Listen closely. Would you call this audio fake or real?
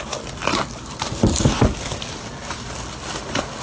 real